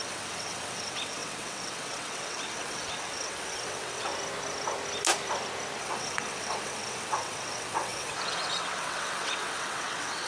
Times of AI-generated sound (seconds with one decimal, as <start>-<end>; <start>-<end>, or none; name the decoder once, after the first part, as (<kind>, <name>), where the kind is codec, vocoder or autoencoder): 0.0-4.1 (vocoder, WaveNeXt); 5.8-10.3